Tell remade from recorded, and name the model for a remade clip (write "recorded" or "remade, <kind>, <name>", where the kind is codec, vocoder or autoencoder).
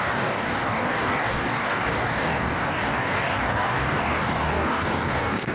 remade, codec, DAC